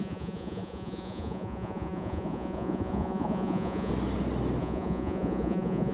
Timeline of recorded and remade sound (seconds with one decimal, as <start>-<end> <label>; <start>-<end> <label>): 0.0-3.9 remade; 3.9-4.6 recorded; 4.6-5.9 remade